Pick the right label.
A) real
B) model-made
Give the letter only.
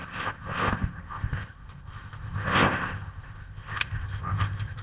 B